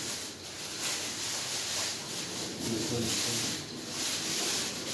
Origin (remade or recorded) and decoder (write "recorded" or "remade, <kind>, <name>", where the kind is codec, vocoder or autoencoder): recorded